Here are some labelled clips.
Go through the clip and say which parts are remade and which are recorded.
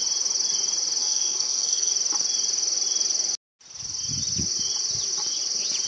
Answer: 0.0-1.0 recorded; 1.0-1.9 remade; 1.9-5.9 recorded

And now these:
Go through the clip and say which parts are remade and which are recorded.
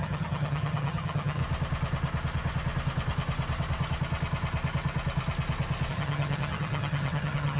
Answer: 0.0-1.4 remade; 1.4-5.9 recorded; 5.9-7.6 remade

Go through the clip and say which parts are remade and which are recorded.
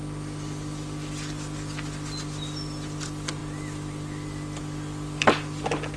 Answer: 0.0-6.0 recorded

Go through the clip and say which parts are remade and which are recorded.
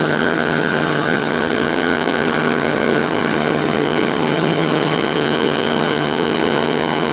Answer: 0.0-7.1 remade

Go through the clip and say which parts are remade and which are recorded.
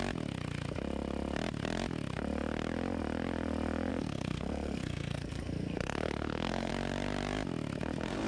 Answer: 0.0-3.9 recorded; 3.9-6.7 remade; 6.7-8.3 recorded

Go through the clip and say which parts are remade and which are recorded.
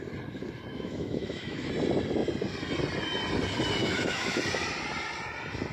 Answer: 0.0-0.7 recorded; 0.7-1.7 remade; 1.7-3.8 recorded; 3.8-4.4 remade; 4.4-5.7 recorded